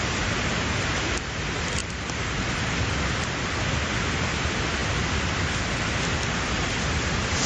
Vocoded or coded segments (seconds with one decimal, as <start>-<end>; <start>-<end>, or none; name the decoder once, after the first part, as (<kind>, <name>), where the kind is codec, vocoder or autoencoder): 1.8-3.0 (vocoder, BigVGAN v2)